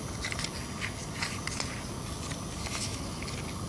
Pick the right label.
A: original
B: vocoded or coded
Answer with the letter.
A